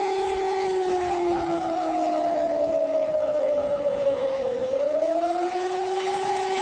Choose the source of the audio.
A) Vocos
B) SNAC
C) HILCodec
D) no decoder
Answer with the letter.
C